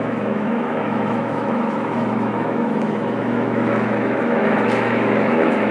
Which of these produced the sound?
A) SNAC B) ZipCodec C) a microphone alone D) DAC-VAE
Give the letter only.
D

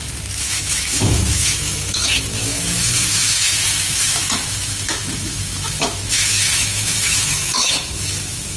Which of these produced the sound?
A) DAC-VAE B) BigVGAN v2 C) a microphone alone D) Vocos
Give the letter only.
A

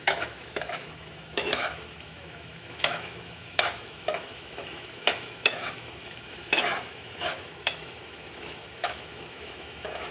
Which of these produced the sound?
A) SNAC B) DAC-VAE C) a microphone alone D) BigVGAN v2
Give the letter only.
B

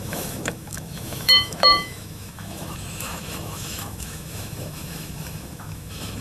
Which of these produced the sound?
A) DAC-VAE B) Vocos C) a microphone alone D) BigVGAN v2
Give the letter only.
A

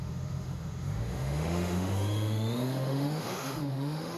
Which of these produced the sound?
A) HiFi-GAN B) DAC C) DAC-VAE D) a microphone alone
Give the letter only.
C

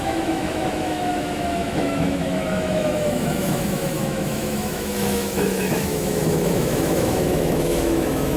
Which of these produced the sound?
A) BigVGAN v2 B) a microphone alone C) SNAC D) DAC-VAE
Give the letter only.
D